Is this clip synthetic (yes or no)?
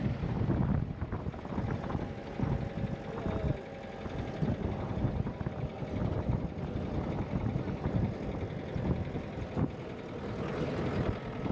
no